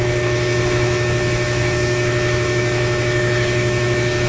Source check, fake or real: fake